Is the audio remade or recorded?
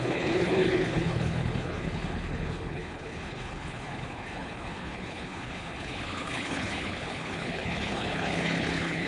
remade